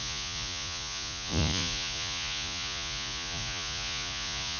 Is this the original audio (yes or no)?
no